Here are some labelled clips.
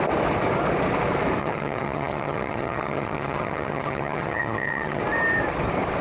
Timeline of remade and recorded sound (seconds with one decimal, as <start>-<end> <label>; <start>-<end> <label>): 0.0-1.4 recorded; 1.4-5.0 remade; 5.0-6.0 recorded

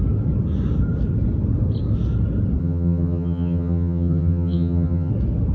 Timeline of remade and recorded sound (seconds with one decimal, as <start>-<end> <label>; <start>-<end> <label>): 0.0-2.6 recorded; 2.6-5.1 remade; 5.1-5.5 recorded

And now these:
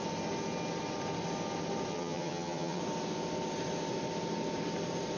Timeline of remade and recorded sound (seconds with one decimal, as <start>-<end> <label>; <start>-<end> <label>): 0.0-1.9 recorded; 1.9-2.8 remade; 2.8-5.2 recorded